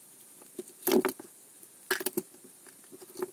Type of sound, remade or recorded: recorded